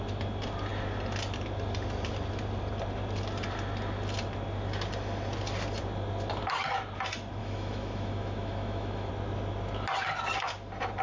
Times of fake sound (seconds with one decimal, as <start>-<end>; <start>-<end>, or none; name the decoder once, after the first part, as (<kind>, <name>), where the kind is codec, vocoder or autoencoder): 7.4-9.1 (autoencoder, DAC-VAE)